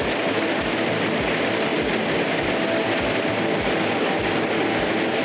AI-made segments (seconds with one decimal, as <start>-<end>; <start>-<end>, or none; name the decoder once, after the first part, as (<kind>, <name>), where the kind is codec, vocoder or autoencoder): none